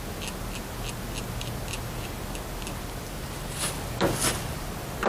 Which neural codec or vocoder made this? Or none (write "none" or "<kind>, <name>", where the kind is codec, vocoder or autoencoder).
none